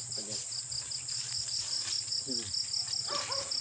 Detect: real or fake real